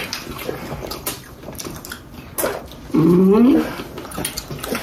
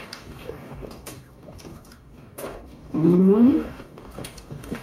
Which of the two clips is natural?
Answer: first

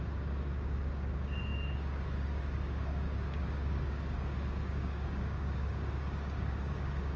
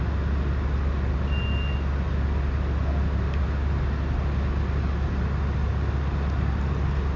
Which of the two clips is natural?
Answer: second